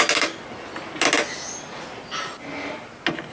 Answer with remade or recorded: recorded